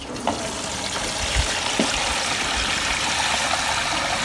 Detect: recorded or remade recorded